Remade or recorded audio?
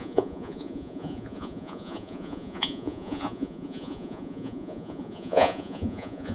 remade